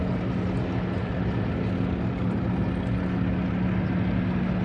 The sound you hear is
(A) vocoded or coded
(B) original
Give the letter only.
B